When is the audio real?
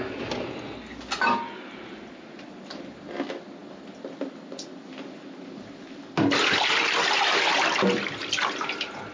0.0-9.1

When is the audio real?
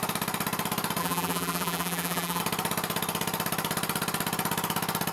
0.0-1.0; 2.4-5.1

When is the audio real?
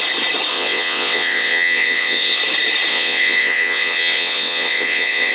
0.0-0.5; 2.4-2.9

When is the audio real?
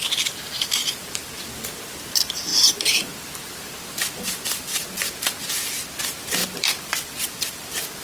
0.0-0.8; 1.4-2.5; 5.4-6.4